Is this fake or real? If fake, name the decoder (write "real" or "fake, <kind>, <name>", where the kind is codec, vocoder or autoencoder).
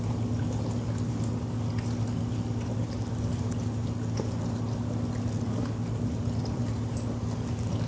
real